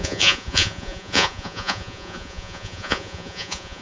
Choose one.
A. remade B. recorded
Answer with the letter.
A